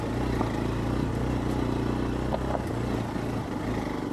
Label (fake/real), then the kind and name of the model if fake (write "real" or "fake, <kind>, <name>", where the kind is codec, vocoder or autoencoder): real